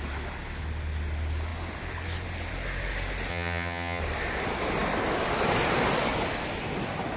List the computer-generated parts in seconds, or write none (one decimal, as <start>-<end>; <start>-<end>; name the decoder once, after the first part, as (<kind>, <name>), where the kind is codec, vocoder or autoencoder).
3.3-4.0 (vocoder, HiFi-GAN)